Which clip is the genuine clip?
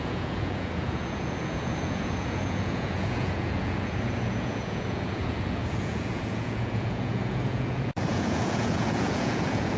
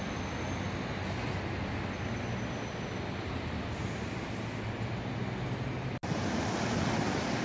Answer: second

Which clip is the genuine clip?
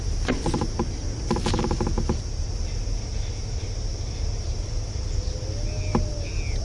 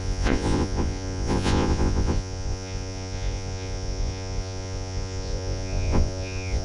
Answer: first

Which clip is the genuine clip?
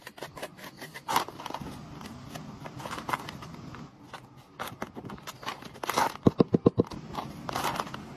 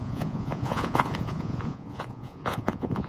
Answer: first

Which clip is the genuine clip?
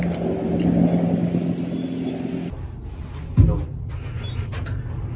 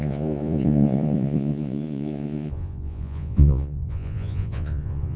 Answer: first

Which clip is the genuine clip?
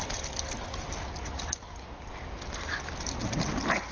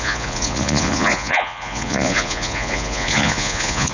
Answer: first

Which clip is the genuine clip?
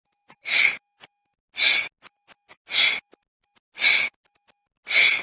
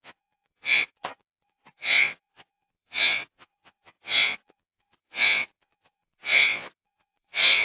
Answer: first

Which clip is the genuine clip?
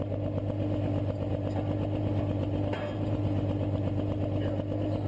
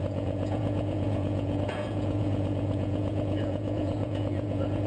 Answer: first